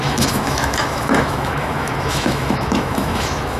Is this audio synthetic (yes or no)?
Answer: yes